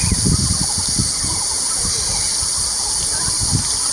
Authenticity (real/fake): real